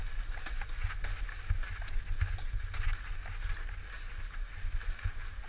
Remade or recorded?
recorded